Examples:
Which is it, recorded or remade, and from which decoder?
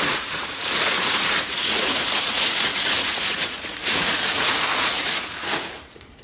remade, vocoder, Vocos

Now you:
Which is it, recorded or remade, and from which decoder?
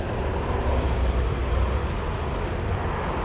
recorded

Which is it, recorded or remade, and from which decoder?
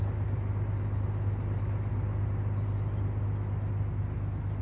recorded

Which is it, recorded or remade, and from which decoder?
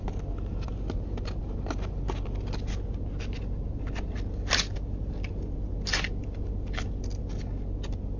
recorded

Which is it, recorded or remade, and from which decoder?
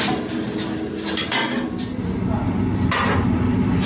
recorded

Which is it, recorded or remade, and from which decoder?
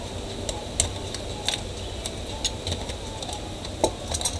recorded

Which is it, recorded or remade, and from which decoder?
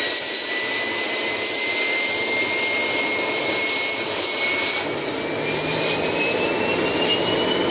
recorded